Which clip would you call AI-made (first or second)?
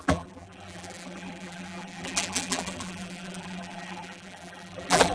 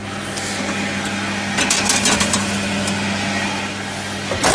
first